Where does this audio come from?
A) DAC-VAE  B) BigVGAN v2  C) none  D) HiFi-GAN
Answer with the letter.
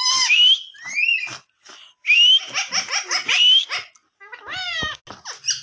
C